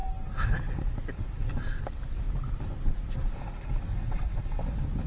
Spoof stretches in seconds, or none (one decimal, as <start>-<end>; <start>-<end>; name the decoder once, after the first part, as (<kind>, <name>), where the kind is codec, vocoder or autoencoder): 3.9-4.6 (vocoder, WaveNeXt)